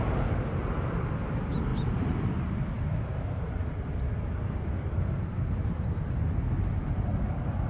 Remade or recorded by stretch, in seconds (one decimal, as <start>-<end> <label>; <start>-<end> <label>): 0.0-7.7 recorded